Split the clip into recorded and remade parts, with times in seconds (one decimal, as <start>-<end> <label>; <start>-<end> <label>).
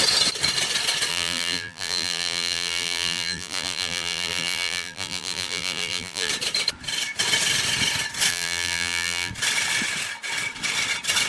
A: 0.0-1.1 recorded; 1.1-6.3 remade; 6.3-8.3 recorded; 8.3-9.3 remade; 9.3-11.3 recorded